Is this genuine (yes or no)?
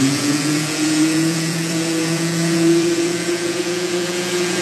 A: no